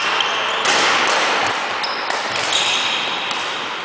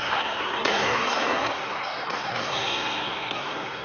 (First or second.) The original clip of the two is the first